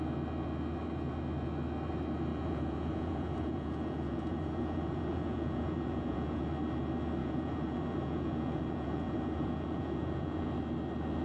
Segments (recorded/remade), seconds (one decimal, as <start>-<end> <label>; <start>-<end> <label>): 0.0-2.3 recorded; 2.3-6.4 remade; 6.4-7.2 recorded; 7.2-10.5 remade; 10.5-11.2 recorded